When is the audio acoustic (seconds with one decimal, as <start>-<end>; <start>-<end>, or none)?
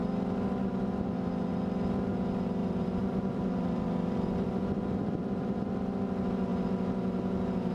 0.0-2.6; 5.7-7.7